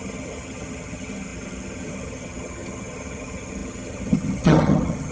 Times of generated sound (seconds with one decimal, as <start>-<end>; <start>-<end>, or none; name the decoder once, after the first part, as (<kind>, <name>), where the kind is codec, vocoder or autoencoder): 0.0-5.1 (vocoder, HiFi-GAN)